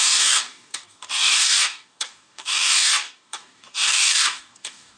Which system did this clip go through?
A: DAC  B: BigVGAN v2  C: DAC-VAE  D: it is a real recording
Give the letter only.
A